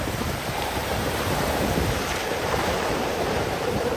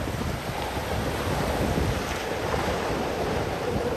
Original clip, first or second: second